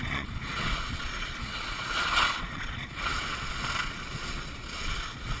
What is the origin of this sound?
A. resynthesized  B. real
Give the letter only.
A